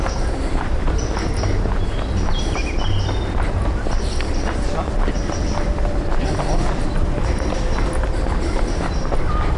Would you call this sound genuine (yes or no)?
yes